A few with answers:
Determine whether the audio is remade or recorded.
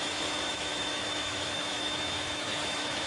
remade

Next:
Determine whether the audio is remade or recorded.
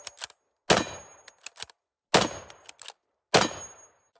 recorded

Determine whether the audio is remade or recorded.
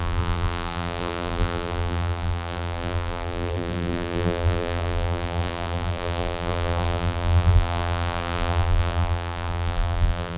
remade